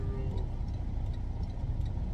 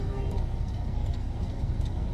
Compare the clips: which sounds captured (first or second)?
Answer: first